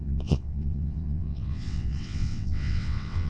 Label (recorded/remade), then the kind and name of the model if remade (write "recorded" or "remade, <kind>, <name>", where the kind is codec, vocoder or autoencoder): remade, vocoder, WaveNeXt